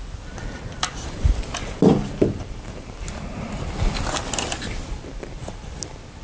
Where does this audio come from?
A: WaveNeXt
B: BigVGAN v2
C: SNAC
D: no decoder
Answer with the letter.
B